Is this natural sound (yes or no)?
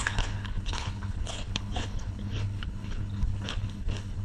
no